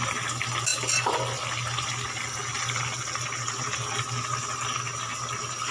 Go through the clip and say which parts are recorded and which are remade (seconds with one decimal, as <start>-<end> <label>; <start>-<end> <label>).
0.0-5.7 recorded